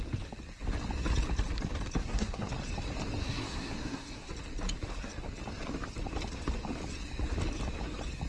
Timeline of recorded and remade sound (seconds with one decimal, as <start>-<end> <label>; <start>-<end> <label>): 0.0-2.0 recorded; 2.0-2.5 remade; 2.5-3.2 recorded; 3.2-4.3 remade; 4.3-8.3 recorded